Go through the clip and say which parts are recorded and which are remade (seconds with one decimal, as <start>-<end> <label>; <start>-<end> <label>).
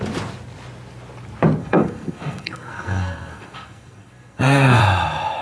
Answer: 0.0-1.6 recorded; 1.6-4.8 remade; 4.8-5.4 recorded